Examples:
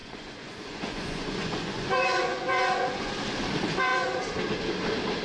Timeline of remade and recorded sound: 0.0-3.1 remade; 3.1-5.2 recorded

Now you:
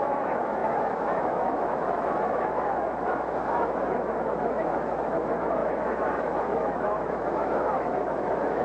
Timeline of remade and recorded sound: 0.0-8.6 remade

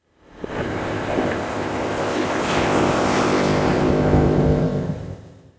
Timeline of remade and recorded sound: 0.0-5.6 remade

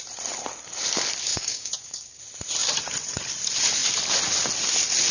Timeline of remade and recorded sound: 0.0-1.3 recorded; 1.3-2.2 remade; 2.2-5.1 recorded

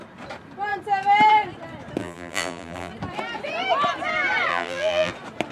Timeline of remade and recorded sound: 0.0-2.0 recorded; 2.0-2.9 remade; 2.9-4.5 recorded; 4.5-5.1 remade; 5.1-5.5 recorded

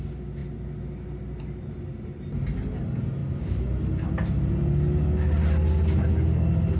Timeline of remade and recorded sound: 0.0-6.8 recorded

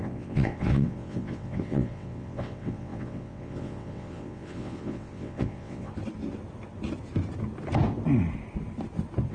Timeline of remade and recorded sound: 0.0-5.9 remade; 5.9-9.3 recorded

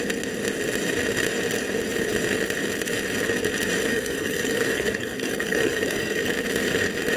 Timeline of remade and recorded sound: 0.0-3.9 recorded; 3.9-6.2 remade; 6.2-7.2 recorded